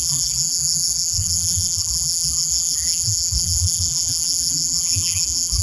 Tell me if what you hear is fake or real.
fake